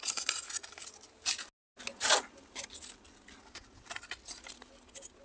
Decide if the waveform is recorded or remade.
recorded